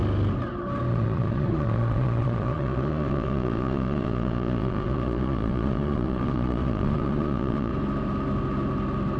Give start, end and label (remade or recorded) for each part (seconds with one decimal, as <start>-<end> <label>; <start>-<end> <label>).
0.0-0.9 recorded; 0.9-7.7 remade; 7.7-9.2 recorded